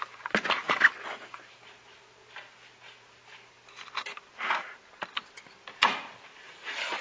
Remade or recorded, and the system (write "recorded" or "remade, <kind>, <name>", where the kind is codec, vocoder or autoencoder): recorded